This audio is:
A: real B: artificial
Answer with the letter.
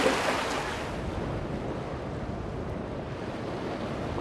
A